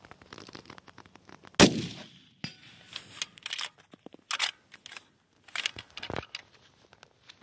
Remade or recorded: recorded